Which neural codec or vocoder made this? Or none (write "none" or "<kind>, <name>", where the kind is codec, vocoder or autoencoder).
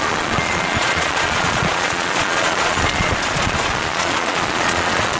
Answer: vocoder, Vocos